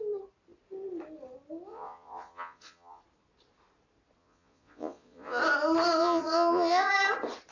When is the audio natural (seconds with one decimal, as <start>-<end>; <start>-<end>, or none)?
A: 0.0-1.7; 3.0-4.2; 5.4-6.0; 6.9-7.5